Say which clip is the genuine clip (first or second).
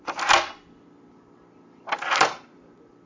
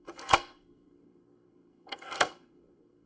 first